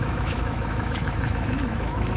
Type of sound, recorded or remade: remade